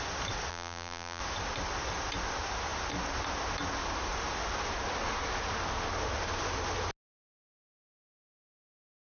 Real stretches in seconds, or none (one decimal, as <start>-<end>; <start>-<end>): 0.0-0.5; 1.2-9.2